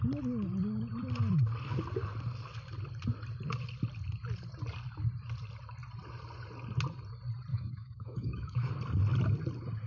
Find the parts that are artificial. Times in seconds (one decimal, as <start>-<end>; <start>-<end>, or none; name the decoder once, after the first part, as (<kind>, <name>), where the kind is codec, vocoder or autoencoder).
7.5-8.7 (autoencoder, DAC-VAE)